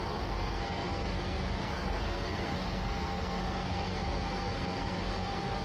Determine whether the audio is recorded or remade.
remade